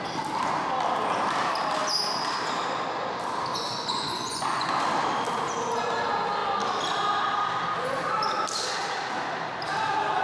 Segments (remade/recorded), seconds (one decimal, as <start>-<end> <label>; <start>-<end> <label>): 0.0-3.5 recorded; 3.5-4.7 remade; 4.7-10.2 recorded